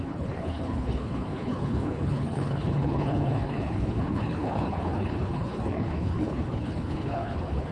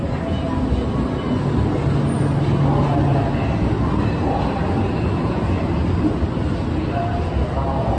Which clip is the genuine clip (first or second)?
second